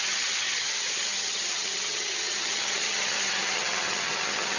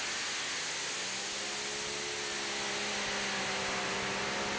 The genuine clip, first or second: second